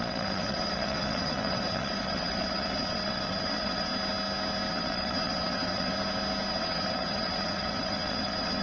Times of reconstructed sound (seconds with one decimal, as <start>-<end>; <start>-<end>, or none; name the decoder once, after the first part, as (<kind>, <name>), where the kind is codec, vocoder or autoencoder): 0.0-3.9 (vocoder, WaveNeXt); 4.7-5.9; 6.5-8.6